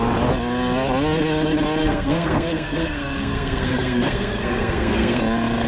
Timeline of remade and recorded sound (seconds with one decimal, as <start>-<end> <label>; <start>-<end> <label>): 0.0-1.8 recorded; 1.8-5.2 remade; 5.2-5.7 recorded